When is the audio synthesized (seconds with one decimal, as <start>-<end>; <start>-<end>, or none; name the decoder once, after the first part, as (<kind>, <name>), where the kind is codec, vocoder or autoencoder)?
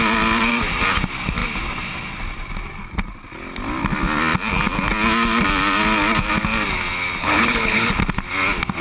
7.2-7.9 (codec, HILCodec)